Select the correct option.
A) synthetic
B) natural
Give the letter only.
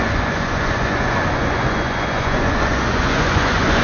A